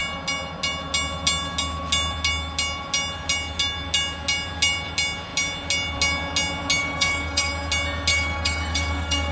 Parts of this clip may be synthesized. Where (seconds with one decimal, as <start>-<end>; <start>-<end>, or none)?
6.8-7.5; 8.1-9.3